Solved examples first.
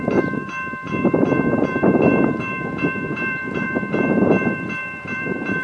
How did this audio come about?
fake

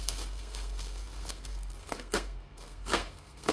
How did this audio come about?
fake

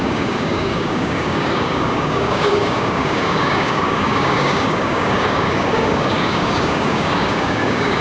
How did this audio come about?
fake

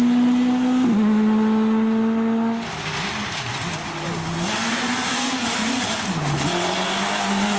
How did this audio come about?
real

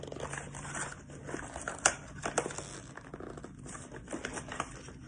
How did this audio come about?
real